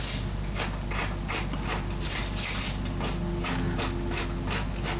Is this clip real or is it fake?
real